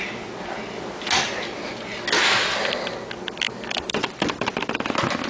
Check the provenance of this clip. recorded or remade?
recorded